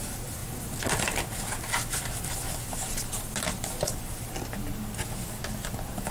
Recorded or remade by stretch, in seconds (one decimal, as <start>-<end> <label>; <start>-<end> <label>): 0.0-6.1 recorded

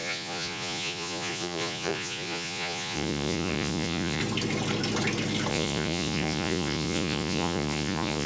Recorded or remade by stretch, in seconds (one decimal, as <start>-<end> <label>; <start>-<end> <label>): 0.0-4.2 remade; 4.2-5.5 recorded; 5.5-8.3 remade

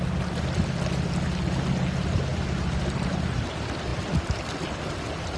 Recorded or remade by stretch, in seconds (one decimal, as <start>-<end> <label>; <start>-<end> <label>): 0.0-5.4 recorded